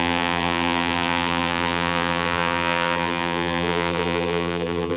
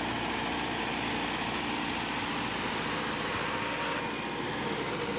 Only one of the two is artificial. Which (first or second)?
first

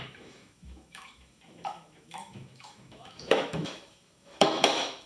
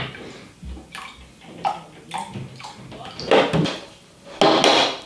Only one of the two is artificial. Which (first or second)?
first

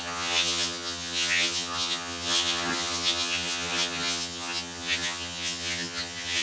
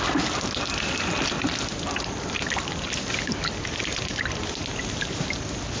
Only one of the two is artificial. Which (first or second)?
first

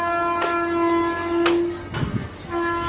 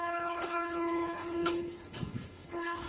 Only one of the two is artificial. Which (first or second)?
second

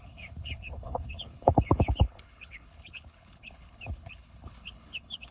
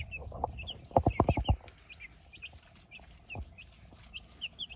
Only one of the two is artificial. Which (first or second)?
first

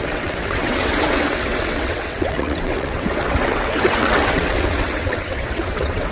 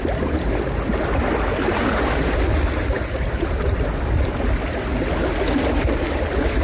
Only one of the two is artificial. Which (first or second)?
first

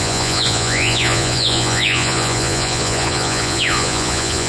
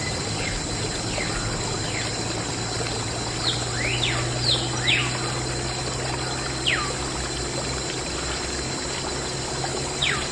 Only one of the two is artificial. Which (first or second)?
first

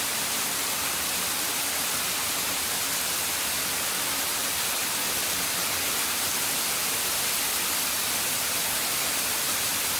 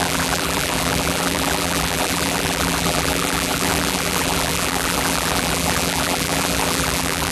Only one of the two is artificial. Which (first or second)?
second